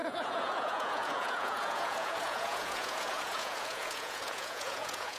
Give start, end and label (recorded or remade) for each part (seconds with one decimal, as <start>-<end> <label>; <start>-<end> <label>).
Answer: 0.0-5.2 remade